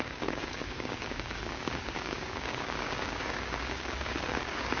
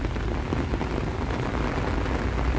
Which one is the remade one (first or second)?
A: first